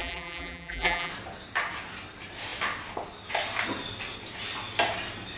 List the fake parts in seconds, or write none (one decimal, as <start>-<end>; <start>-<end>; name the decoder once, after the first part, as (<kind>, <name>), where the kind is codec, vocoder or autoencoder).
0.0-1.1 (vocoder, BigVGAN v2)